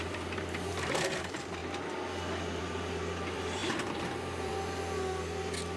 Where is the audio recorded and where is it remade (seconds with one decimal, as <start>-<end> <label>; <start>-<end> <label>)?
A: 0.0-1.6 remade; 1.6-2.6 recorded; 2.6-4.5 remade; 4.5-5.8 recorded